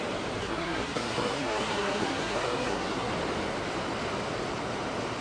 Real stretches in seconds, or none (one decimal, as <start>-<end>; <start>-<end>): 0.0-0.4; 3.1-5.2

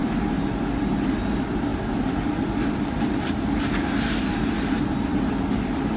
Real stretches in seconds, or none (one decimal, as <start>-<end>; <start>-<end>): 0.0-6.0

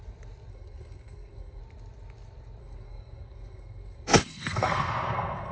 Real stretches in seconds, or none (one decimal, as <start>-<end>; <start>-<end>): 0.0-0.5; 1.6-2.6